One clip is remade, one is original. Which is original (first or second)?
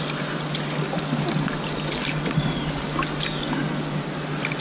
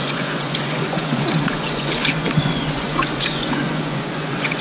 first